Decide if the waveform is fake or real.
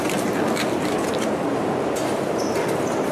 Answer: real